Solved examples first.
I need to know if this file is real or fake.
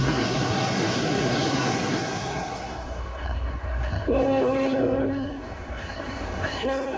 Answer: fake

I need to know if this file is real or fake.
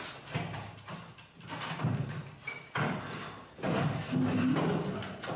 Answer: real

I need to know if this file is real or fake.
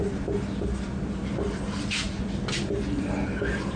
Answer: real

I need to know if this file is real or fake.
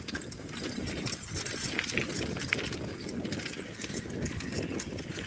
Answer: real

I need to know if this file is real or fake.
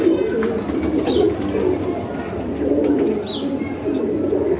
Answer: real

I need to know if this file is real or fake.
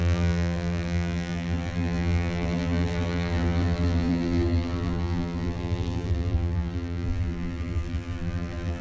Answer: fake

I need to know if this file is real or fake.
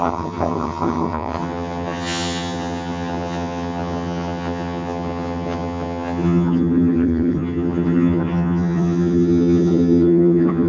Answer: fake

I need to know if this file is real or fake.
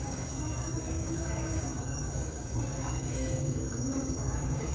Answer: fake